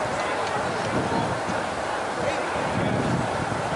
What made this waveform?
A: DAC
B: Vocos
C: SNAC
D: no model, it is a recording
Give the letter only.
D